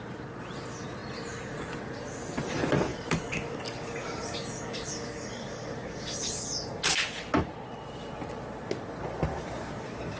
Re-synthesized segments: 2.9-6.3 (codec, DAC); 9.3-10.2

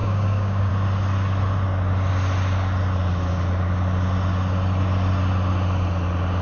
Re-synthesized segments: 0.0-0.7 (codec, DAC)

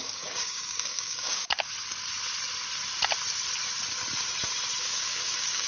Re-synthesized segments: 0.0-1.4 (codec, DAC); 4.8-5.7

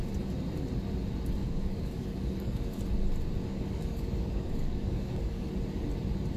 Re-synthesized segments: 1.4-2.8 (codec, DAC); 3.4-5.5

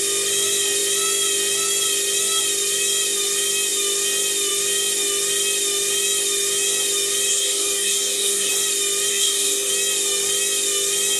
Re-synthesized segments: 7.3-8.5 (codec, DAC); 9.1-9.7